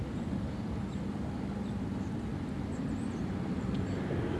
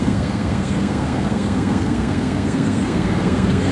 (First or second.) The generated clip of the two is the second